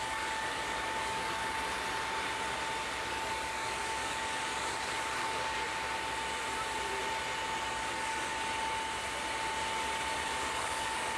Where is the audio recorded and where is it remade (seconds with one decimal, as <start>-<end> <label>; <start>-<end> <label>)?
0.0-1.4 remade; 1.4-3.1 recorded; 3.1-5.6 remade; 5.6-7.6 recorded; 7.6-8.3 remade; 8.3-10.6 recorded; 10.6-11.2 remade